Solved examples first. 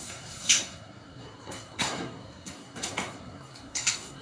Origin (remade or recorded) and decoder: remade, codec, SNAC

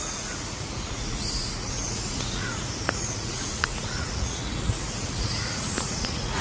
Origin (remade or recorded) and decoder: remade, vocoder, Vocos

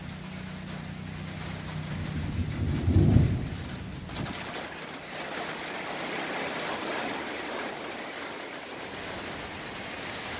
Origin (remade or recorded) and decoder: recorded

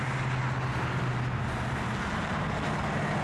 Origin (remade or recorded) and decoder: recorded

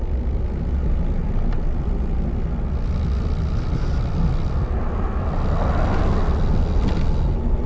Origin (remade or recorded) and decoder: recorded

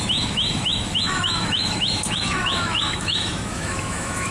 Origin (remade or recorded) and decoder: remade, autoencoder, DAC-VAE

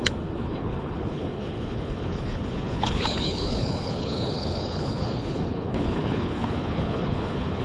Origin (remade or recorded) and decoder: remade, codec, HILCodec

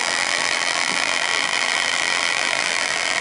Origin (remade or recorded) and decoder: remade, vocoder, BigVGAN v2